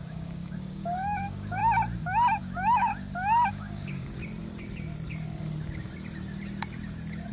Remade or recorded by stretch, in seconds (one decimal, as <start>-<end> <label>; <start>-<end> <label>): 0.0-1.6 remade; 1.6-2.4 recorded; 2.4-2.9 remade; 2.9-3.5 recorded; 3.5-4.2 remade; 4.2-7.3 recorded